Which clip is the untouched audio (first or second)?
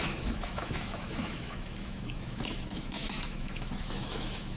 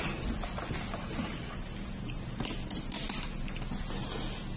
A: second